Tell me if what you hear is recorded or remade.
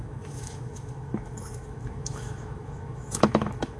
remade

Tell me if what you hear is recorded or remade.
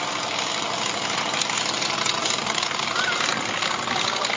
recorded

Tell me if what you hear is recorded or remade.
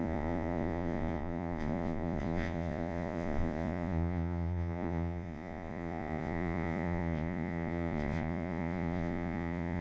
remade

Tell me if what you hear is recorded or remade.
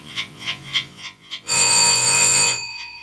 remade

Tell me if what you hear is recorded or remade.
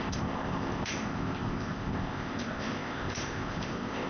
remade